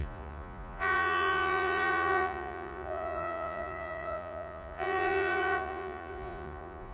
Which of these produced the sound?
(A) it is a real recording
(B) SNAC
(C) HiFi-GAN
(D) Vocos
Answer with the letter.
D